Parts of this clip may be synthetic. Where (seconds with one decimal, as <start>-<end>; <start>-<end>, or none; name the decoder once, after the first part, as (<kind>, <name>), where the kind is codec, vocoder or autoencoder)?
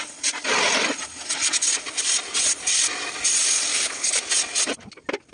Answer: 3.7-4.2 (codec, HILCodec)